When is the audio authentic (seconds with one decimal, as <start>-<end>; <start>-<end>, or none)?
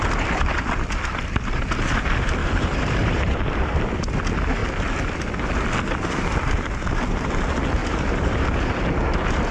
0.0-2.4; 3.8-7.8; 8.4-9.5